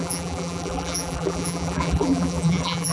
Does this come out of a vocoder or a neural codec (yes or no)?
yes